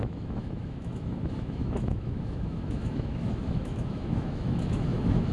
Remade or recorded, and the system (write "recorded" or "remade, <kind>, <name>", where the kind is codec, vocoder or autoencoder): remade, autoencoder, DAC-VAE